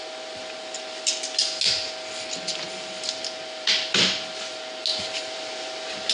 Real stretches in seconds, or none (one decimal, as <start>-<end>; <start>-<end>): 0.0-2.5; 4.5-4.9